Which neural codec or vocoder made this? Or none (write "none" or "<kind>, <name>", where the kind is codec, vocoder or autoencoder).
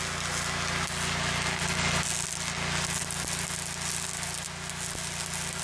none